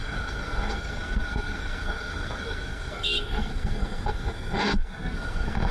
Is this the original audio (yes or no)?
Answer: no